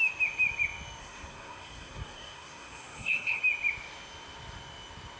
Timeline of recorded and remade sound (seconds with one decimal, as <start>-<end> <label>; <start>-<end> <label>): 0.0-1.0 recorded; 1.0-3.4 remade; 3.4-5.2 recorded